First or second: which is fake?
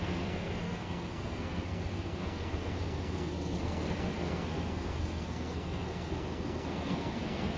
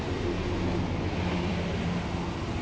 first